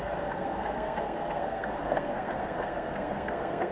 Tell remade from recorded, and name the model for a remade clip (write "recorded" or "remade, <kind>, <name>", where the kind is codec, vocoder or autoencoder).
remade, codec, SNAC